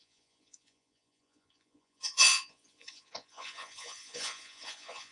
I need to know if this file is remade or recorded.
remade